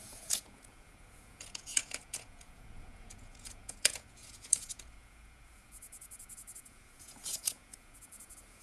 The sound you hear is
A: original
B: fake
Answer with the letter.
B